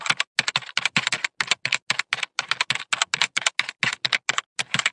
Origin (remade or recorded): recorded